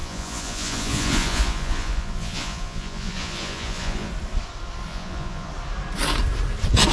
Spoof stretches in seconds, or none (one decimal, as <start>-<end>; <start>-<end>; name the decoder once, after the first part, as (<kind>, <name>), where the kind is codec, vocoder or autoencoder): 0.0-4.1 (vocoder, Vocos); 4.9-5.5